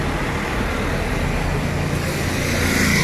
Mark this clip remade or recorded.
recorded